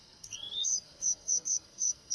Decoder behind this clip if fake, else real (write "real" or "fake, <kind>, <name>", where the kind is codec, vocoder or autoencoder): fake, codec, SNAC